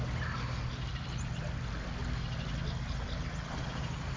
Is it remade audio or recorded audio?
recorded